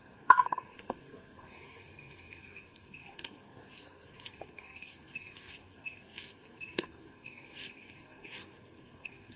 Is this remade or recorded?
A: remade